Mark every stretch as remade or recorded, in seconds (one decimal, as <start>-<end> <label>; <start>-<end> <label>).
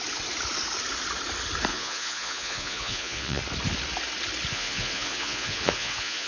0.0-1.7 recorded; 1.7-3.4 remade; 3.4-4.5 recorded; 4.5-6.3 remade